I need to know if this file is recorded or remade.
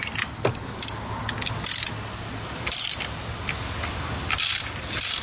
recorded